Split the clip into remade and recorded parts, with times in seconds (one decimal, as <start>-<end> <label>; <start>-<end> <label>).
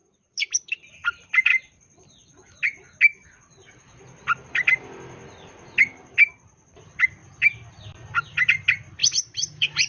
0.0-0.9 remade; 0.9-9.0 recorded; 9.0-9.9 remade